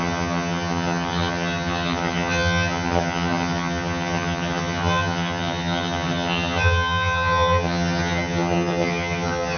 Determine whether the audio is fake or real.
fake